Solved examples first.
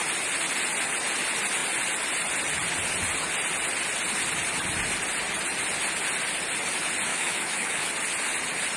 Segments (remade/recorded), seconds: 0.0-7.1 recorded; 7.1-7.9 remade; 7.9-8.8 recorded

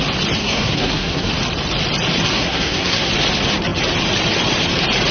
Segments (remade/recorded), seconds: 0.0-0.4 recorded; 0.4-1.3 remade; 1.3-2.3 recorded; 2.3-3.1 remade; 3.1-5.1 recorded

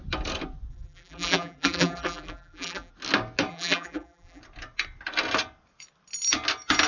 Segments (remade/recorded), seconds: 0.0-0.7 recorded; 0.7-2.9 remade; 2.9-3.5 recorded; 3.5-4.4 remade; 4.4-6.9 recorded

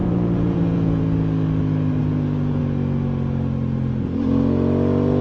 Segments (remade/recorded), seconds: 0.0-1.0 remade; 1.0-2.0 recorded; 2.0-2.6 remade; 2.6-5.2 recorded

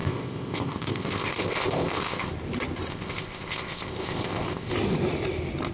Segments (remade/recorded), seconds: 0.0-2.3 remade; 2.3-2.9 recorded; 2.9-4.7 remade; 4.7-5.7 recorded

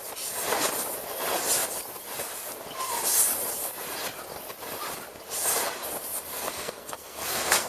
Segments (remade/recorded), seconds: 0.0-6.3 recorded; 6.3-7.7 remade